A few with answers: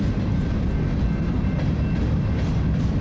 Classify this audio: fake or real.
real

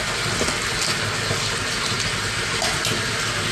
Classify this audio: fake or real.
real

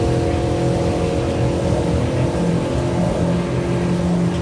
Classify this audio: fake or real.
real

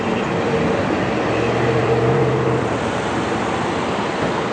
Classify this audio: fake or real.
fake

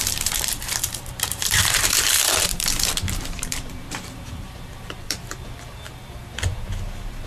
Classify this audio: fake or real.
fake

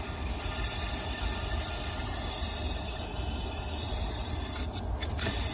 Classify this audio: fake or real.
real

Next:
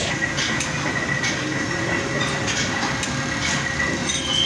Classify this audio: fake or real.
real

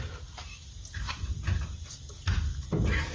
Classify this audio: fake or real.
real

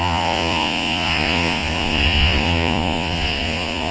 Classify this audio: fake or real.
fake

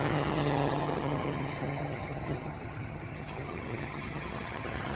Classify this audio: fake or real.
fake